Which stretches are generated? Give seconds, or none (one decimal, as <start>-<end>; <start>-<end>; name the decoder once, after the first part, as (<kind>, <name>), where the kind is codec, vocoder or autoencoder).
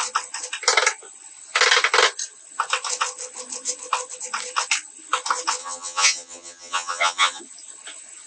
5.6-7.4 (vocoder, HiFi-GAN)